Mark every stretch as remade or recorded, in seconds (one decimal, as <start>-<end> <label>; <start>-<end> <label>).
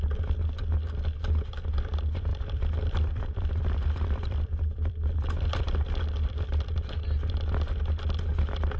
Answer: 0.0-2.3 recorded; 2.3-4.9 remade; 4.9-8.8 recorded